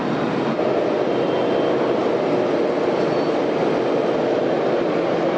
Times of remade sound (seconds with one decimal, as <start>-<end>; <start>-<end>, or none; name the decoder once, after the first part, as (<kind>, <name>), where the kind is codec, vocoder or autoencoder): 2.0-3.0 (vocoder, BigVGAN v2)